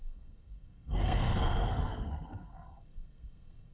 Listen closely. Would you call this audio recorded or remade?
remade